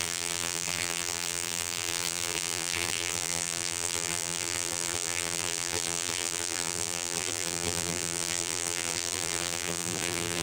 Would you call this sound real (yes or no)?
no